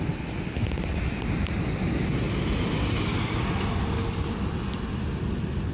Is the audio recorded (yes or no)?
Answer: yes